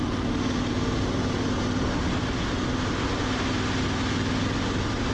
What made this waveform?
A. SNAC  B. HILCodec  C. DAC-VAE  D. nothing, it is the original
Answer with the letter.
D